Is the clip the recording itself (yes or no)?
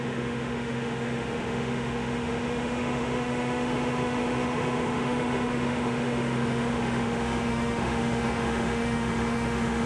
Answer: no